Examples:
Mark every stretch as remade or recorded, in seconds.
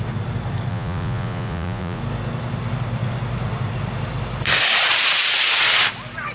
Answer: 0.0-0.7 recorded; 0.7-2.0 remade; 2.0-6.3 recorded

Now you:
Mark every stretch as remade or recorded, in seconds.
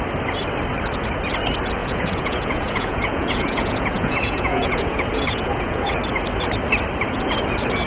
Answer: 0.0-1.8 recorded; 1.8-5.9 remade; 5.9-7.9 recorded